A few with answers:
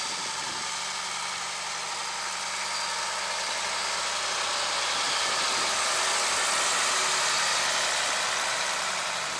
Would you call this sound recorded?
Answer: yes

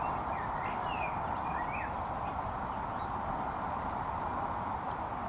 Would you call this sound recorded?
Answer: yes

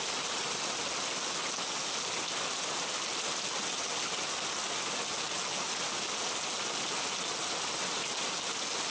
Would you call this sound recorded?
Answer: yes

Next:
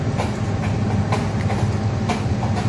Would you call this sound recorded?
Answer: yes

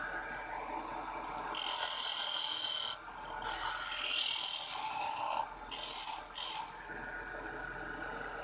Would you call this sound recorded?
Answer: yes